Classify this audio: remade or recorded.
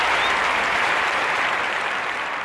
remade